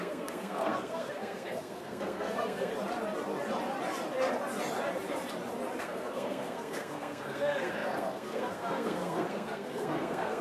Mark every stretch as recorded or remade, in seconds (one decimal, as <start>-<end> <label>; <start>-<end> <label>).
0.0-2.7 remade; 2.7-5.8 recorded; 5.8-10.4 remade